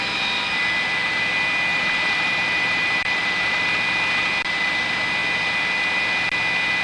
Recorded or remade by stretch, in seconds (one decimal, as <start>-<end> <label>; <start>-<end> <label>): 0.0-1.7 recorded; 1.7-3.7 remade; 3.7-6.8 recorded